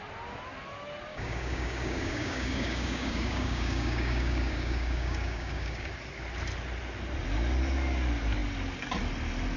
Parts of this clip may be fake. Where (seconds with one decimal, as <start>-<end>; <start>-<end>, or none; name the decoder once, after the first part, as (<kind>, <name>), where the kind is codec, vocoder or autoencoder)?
1.1-5.9 (codec, DAC)